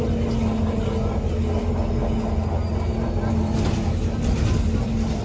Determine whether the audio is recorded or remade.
recorded